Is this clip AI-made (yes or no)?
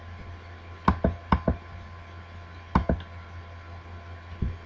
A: no